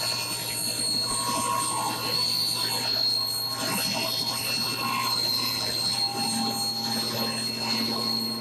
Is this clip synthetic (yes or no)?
no